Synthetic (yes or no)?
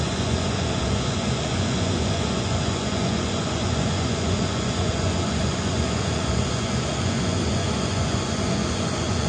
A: yes